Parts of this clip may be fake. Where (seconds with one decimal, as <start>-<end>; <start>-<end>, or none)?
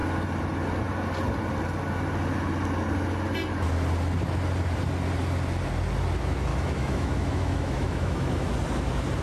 6.5-8.5